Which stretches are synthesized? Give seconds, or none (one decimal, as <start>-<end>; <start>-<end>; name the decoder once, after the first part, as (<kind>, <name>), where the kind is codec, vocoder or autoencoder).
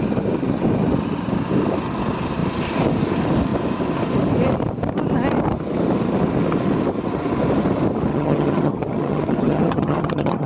8.1-10.5 (vocoder, HiFi-GAN)